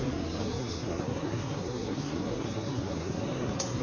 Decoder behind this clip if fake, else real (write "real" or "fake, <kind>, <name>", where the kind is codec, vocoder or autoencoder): fake, codec, SNAC